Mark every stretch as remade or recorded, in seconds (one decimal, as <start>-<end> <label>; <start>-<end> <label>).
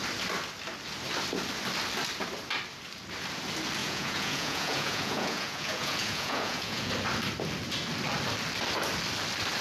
0.0-3.8 recorded; 3.8-6.9 remade; 6.9-9.6 recorded